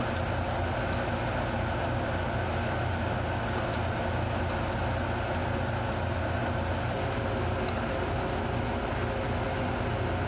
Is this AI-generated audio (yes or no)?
no